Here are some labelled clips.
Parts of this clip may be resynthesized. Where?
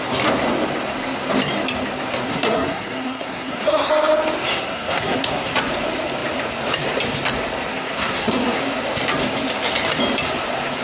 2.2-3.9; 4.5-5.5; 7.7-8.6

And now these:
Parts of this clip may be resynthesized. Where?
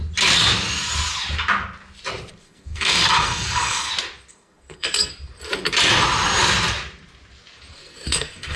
2.4-3.9; 4.3-5.1; 7.7-8.6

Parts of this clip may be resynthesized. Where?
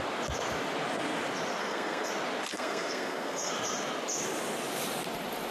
1.6-2.1; 2.5-3.5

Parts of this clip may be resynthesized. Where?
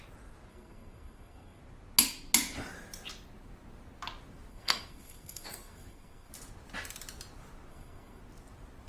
0.5-1.6; 4.5-6.3; 7.7-8.2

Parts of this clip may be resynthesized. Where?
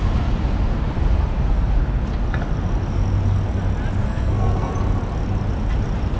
4.0-4.7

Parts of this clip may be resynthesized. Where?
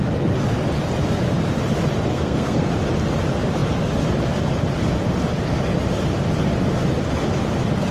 2.1-2.7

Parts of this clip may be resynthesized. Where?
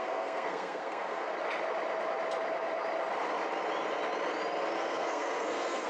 0.0-1.3; 4.8-5.9